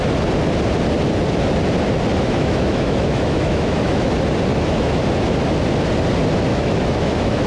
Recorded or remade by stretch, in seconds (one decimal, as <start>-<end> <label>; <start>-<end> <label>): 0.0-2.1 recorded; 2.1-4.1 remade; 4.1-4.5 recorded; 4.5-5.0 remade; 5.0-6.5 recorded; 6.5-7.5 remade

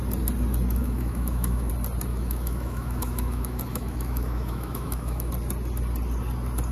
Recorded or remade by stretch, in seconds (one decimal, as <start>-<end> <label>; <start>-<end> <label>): 0.0-0.8 recorded; 0.8-1.7 remade; 1.7-2.1 recorded; 2.1-5.3 remade; 5.3-6.7 recorded

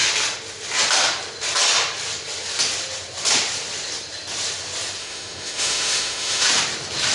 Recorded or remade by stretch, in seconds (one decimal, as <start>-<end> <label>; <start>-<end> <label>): 0.0-5.0 recorded; 5.0-6.5 remade; 6.5-7.1 recorded

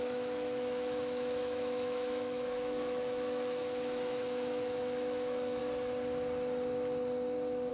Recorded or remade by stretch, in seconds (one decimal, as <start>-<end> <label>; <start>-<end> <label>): 0.0-5.6 remade; 5.6-7.7 recorded